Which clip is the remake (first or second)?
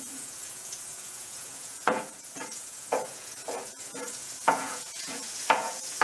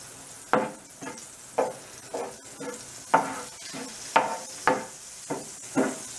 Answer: first